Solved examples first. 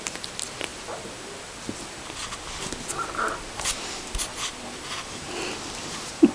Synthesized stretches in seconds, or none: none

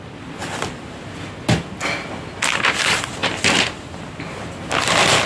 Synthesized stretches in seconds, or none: 0.4-1.3; 3.2-3.8

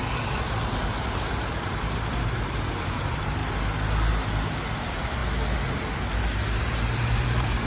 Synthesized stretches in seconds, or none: 1.8-3.4; 4.7-5.2; 6.6-7.7

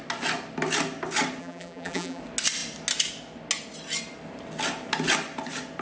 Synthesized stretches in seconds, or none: 1.4-2.2

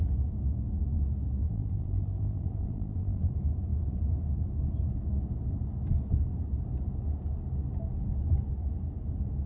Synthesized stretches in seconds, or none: 1.4-3.3

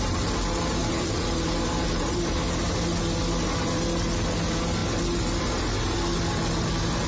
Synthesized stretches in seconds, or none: 0.8-2.4